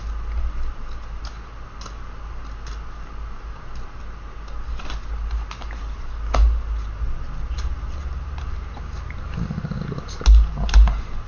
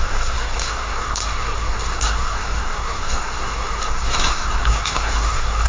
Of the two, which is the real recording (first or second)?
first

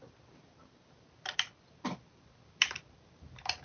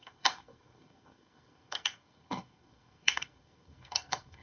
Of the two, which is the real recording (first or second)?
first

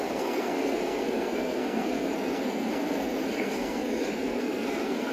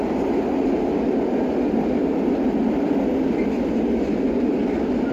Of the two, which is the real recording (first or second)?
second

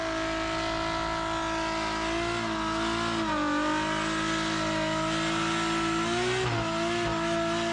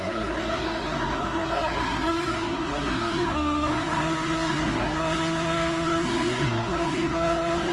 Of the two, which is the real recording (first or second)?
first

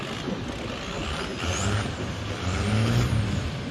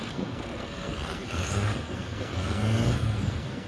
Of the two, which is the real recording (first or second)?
first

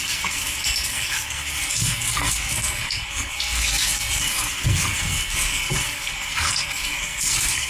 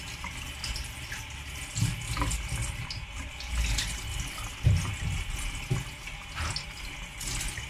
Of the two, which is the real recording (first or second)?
second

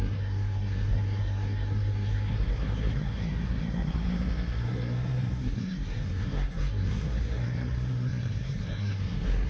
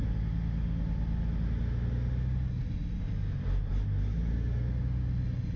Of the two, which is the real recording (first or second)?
second